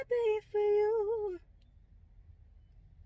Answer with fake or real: real